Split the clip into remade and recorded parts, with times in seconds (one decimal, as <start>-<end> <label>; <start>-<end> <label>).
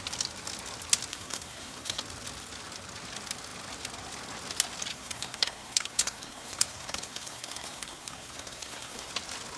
0.0-1.1 recorded; 1.1-2.0 remade; 2.0-4.9 recorded; 4.9-9.1 remade; 9.1-9.6 recorded